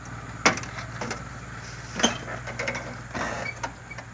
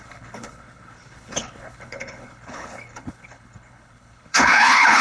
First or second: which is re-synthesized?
second